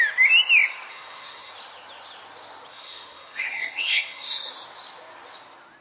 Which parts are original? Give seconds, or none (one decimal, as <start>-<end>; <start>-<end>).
0.0-0.9; 1.5-2.7; 4.5-5.8